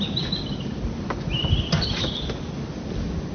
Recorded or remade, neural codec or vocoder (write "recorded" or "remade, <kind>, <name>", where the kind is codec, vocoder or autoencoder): recorded